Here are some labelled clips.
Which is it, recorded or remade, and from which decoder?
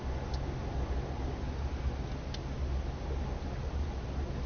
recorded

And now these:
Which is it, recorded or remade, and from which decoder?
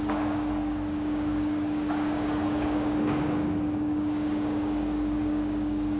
remade, codec, DAC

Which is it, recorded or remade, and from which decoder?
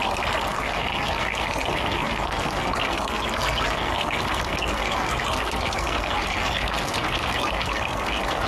remade, codec, SNAC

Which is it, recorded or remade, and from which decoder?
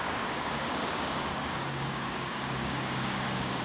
remade, codec, DAC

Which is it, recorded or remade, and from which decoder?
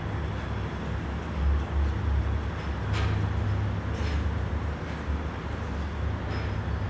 recorded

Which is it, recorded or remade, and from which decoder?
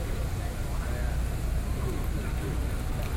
recorded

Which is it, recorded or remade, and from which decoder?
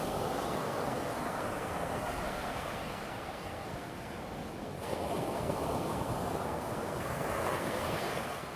remade, codec, SNAC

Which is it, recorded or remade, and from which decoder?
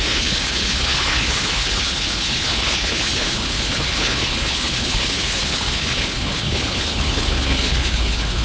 remade, codec, HILCodec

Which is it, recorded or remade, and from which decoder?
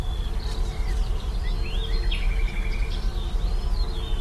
recorded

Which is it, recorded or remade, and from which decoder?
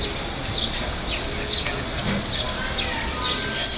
recorded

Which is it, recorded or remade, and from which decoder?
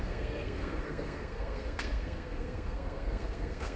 remade, codec, SNAC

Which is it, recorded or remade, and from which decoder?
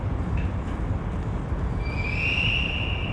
recorded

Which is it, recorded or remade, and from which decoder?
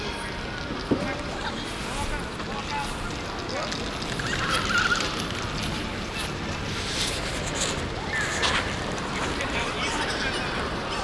recorded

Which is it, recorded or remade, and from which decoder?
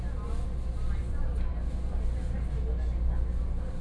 recorded